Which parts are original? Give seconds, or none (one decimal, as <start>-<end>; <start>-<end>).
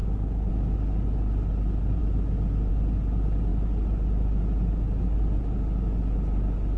0.0-6.8